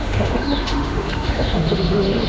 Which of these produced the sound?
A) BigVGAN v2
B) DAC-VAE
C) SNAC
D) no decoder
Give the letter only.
B